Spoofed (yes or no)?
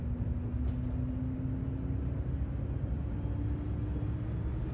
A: no